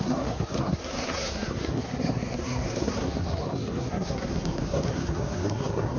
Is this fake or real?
fake